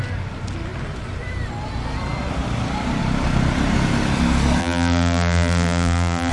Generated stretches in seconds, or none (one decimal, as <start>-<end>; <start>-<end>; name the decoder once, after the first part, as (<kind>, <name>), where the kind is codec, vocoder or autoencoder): 4.6-6.3 (vocoder, BigVGAN v2)